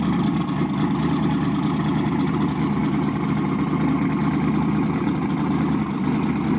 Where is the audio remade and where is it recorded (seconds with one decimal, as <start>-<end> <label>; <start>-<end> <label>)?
0.0-6.6 recorded